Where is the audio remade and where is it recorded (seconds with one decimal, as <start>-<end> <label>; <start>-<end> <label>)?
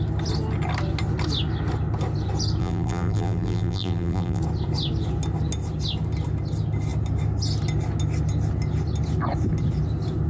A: 0.0-2.6 recorded; 2.6-4.4 remade; 4.4-10.3 recorded